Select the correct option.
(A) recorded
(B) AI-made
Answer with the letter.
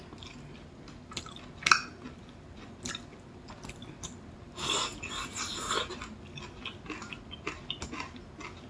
A